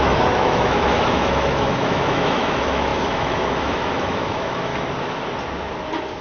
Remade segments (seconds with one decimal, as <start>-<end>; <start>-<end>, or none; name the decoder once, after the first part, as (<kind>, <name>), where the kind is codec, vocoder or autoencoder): 0.0-4.7 (autoencoder, DAC-VAE)